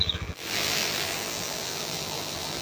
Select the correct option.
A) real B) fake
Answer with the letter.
B